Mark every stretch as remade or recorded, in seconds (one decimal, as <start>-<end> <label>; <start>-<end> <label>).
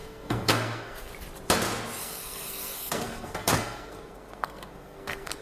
0.0-1.1 remade; 1.1-2.0 recorded; 2.0-5.4 remade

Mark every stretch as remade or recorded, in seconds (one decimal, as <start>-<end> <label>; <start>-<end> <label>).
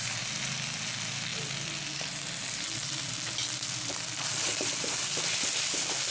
0.0-6.1 recorded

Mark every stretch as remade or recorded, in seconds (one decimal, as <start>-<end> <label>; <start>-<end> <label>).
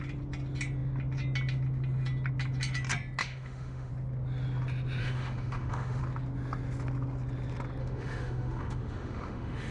0.0-3.2 recorded; 3.2-3.9 remade; 3.9-5.0 recorded; 5.0-6.0 remade; 6.0-7.8 recorded; 7.8-9.7 remade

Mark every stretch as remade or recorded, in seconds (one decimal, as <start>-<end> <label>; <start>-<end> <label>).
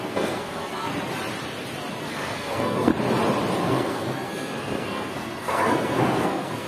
0.0-0.9 remade; 0.9-2.0 recorded; 2.0-2.9 remade; 2.9-3.6 recorded; 3.6-6.7 remade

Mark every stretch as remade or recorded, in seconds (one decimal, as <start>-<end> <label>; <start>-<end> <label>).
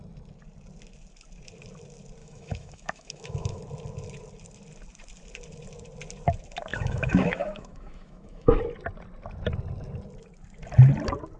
0.0-2.2 recorded; 2.2-3.6 remade; 3.6-6.7 recorded; 6.7-8.6 remade; 8.6-11.4 recorded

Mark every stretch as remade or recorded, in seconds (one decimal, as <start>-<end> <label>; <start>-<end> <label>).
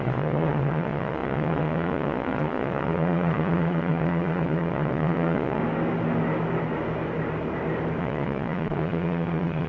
0.0-5.6 remade; 5.6-8.0 recorded; 8.0-9.7 remade